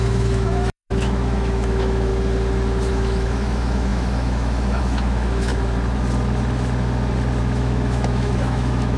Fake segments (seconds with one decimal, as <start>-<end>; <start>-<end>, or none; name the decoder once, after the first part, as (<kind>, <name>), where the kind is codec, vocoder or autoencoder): 0.0-2.1 (autoencoder, DAC-VAE); 2.9-5.5; 7.4-9.0